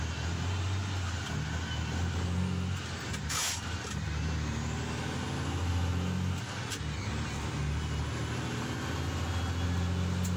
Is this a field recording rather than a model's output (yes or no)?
yes